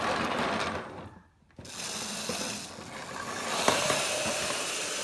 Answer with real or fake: real